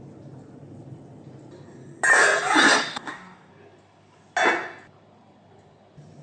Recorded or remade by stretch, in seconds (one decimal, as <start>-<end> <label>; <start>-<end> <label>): 0.0-2.9 recorded; 2.9-3.5 remade; 3.5-6.2 recorded